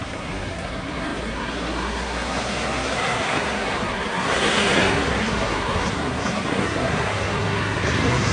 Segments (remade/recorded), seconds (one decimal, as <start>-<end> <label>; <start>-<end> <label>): 0.0-8.3 remade